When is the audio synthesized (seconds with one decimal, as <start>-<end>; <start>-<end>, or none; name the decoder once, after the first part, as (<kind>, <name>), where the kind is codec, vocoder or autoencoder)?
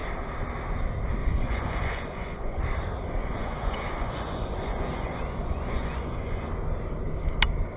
1.2-2.6 (vocoder, Vocos); 3.2-6.5